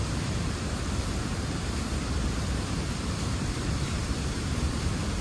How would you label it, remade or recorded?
remade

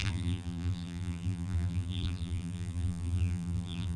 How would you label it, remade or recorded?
remade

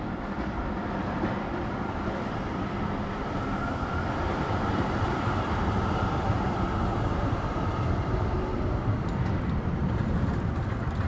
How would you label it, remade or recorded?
remade